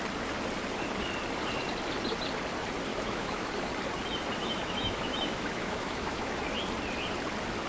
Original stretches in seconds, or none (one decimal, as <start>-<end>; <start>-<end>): 0.0-2.9; 3.5-4.4; 6.4-7.7